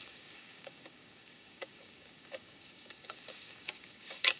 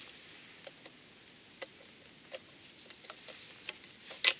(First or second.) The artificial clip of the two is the first